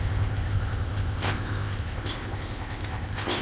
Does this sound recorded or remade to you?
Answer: remade